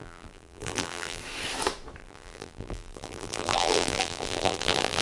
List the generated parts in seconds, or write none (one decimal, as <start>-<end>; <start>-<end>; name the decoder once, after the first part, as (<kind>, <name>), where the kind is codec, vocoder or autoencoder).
0.0-1.2 (vocoder, BigVGAN v2); 2.0-5.0